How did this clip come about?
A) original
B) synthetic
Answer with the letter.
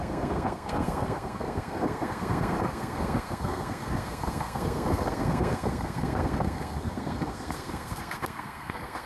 B